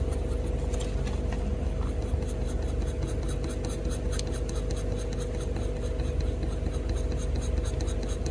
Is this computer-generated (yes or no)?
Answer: no